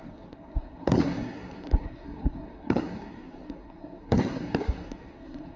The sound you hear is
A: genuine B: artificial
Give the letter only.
B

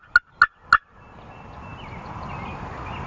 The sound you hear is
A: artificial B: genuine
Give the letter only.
B